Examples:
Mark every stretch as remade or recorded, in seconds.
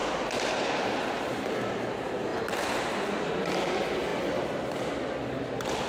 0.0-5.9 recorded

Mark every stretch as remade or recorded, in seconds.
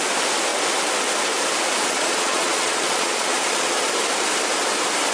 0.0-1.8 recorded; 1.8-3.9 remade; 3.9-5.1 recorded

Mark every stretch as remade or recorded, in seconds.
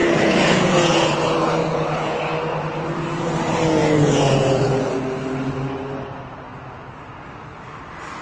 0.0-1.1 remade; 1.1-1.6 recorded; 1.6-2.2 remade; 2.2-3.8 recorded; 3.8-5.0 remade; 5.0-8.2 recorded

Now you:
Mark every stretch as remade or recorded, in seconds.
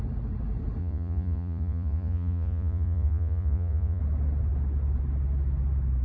0.0-0.8 recorded; 0.8-4.0 remade; 4.0-6.0 recorded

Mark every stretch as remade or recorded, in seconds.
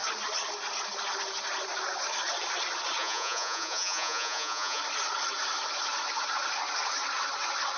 0.0-3.0 recorded; 3.0-4.8 remade; 4.8-7.8 recorded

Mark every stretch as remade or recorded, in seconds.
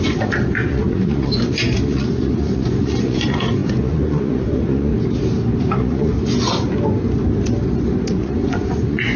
0.0-4.9 remade; 4.9-5.6 recorded; 5.6-6.1 remade; 6.1-8.2 recorded; 8.2-9.2 remade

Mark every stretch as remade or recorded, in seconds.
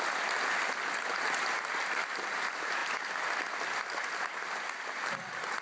0.0-5.6 recorded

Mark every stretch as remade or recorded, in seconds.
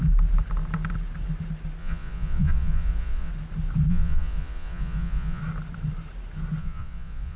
0.0-1.8 recorded; 1.8-3.3 remade; 3.3-3.9 recorded; 3.9-5.4 remade; 5.4-6.6 recorded; 6.6-7.4 remade